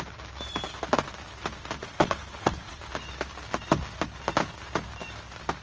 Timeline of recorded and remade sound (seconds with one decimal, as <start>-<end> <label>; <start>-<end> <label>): 0.0-1.8 recorded; 1.8-2.8 remade; 2.8-5.6 recorded